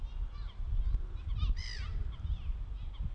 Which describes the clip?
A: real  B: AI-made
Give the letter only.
A